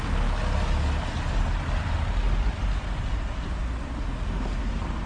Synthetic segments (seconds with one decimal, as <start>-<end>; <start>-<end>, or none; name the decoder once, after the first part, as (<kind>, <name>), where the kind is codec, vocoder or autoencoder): none